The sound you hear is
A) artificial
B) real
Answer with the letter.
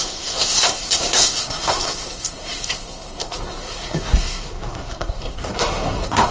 A